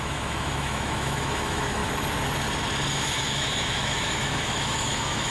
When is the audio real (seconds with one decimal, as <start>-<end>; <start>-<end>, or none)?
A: 1.8-2.9